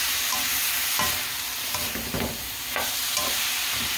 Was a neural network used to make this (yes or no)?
yes